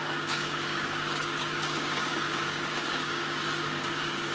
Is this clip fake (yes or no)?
yes